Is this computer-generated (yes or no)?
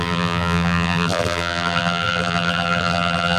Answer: yes